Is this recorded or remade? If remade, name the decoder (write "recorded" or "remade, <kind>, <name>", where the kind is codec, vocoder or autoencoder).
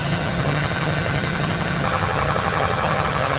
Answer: remade, vocoder, HiFi-GAN